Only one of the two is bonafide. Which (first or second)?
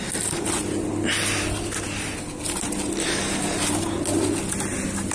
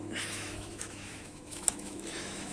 first